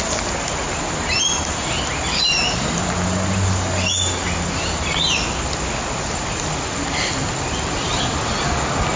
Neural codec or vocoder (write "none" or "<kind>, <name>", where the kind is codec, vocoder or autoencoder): none